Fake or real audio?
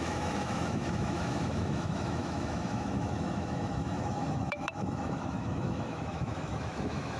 fake